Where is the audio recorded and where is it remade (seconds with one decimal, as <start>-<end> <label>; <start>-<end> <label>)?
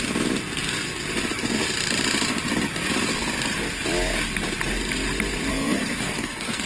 0.0-5.5 recorded; 5.5-6.7 remade